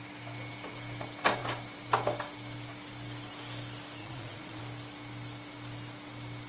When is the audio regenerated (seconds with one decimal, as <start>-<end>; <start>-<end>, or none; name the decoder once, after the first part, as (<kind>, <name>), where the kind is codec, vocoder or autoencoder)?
4.0-4.6 (vocoder, Vocos)